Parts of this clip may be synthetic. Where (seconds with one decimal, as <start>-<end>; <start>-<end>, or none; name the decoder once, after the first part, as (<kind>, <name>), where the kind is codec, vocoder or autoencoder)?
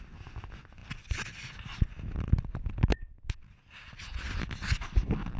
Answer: none